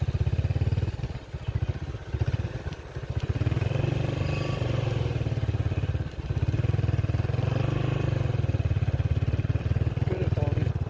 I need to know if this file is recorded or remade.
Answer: recorded